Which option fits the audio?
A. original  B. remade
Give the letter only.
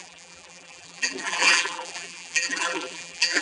B